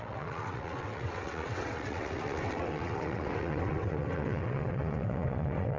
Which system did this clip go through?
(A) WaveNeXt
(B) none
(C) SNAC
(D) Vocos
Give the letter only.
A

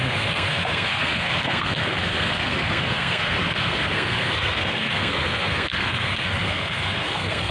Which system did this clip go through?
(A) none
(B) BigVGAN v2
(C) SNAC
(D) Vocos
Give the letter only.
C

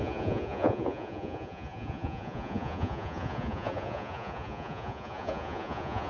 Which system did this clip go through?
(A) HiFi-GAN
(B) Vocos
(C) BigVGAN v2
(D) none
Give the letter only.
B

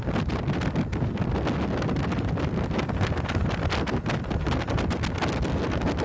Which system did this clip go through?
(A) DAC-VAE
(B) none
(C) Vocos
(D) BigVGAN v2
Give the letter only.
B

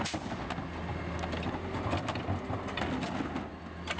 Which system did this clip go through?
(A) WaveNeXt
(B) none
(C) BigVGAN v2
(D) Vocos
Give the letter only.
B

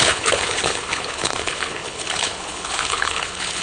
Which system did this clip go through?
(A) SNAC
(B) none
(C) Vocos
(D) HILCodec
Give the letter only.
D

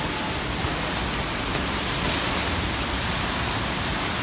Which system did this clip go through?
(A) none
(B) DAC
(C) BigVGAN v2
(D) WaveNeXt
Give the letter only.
A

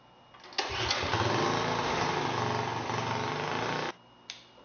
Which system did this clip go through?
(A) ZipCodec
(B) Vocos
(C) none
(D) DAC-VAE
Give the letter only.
C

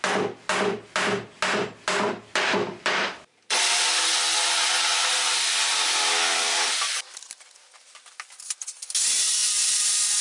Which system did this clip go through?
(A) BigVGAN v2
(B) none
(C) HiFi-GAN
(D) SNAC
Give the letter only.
B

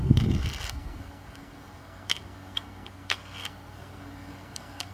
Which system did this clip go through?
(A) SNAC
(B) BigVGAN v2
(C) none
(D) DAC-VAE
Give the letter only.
A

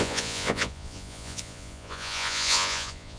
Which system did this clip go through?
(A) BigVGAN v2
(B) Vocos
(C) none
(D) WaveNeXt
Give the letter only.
B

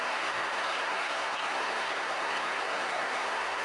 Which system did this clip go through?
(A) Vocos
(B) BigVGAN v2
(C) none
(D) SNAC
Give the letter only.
D